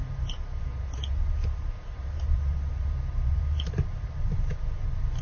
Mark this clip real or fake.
fake